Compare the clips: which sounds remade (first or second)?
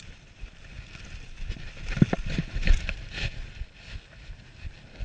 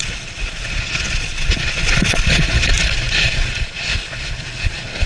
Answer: second